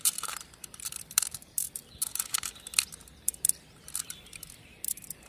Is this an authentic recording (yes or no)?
no